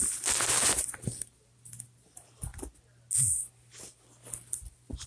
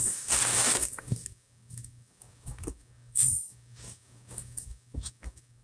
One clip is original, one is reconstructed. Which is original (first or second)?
first